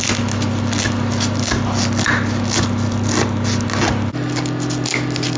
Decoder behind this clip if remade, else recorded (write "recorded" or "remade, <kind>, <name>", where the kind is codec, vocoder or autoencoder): recorded